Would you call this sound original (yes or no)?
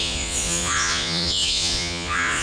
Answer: no